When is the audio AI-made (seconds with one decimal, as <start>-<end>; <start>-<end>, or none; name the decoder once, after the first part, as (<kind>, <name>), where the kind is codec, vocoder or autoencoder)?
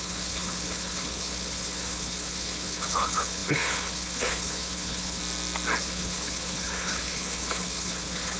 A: 0.0-5.2 (codec, HILCodec); 5.8-8.4